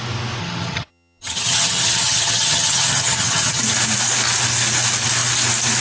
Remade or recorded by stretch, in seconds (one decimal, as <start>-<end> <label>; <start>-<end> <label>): 0.0-0.4 recorded; 0.4-3.6 remade; 3.6-5.8 recorded